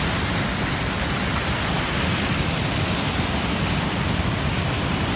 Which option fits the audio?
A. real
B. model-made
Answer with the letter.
A